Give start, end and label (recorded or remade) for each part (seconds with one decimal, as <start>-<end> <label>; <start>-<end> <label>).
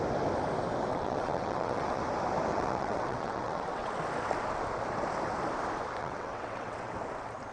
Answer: 0.0-0.9 recorded; 0.9-2.0 remade; 2.0-2.5 recorded; 2.5-3.9 remade; 3.9-6.0 recorded; 6.0-6.9 remade; 6.9-7.5 recorded